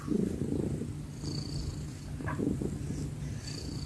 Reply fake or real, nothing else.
real